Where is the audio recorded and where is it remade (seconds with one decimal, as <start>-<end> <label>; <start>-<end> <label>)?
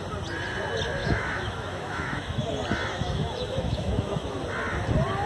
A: 0.0-1.0 recorded; 1.0-2.5 remade; 2.5-2.9 recorded; 2.9-4.4 remade; 4.4-5.3 recorded